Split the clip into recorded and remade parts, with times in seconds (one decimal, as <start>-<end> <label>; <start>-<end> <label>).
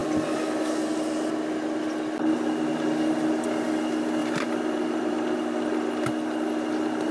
0.0-4.2 recorded; 4.2-5.7 remade; 5.7-7.1 recorded